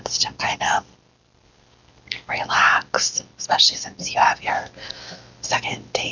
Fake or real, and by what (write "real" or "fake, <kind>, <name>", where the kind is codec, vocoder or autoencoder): real